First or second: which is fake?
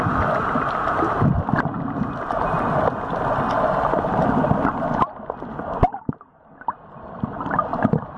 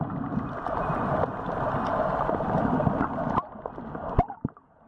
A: second